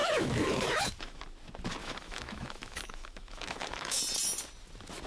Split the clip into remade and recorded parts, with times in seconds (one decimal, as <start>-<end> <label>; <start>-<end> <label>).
0.0-1.2 remade; 1.2-1.8 recorded; 1.8-4.0 remade; 4.0-5.1 recorded